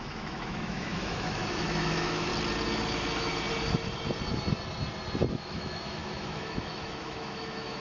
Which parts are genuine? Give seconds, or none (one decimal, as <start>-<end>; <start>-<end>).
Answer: 2.3-5.3